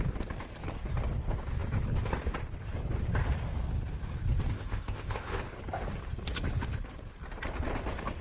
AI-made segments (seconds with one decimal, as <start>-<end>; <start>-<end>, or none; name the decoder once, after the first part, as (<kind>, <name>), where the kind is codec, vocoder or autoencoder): 4.5-5.4 (codec, ZipCodec)